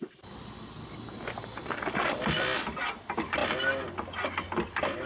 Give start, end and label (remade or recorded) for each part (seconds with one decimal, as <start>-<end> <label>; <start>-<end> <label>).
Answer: 0.0-5.1 recorded